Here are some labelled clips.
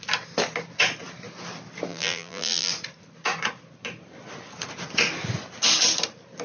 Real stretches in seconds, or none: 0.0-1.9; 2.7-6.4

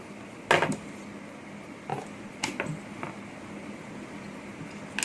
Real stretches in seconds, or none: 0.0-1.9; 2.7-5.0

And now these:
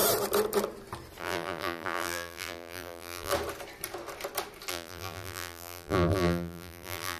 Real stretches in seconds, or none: 0.0-1.2; 3.3-4.7